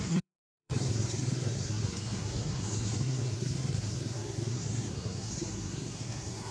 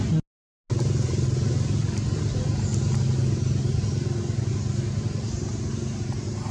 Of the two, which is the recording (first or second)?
second